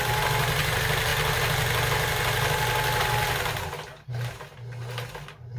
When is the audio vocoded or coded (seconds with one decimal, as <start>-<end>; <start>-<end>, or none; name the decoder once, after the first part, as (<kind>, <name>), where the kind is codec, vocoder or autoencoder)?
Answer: none